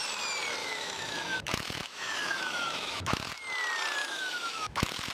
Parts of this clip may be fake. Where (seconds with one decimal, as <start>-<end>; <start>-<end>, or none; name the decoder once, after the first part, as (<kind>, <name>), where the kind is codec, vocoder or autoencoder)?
0.6-3.3 (autoencoder, DAC-VAE); 4.0-5.1